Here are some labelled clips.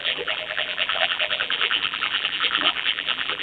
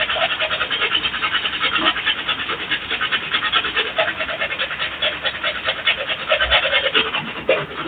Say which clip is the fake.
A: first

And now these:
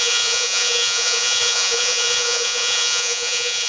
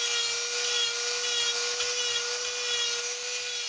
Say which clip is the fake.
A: first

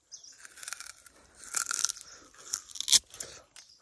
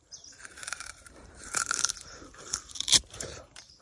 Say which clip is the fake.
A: second